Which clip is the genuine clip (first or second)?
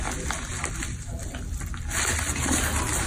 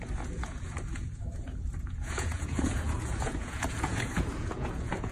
first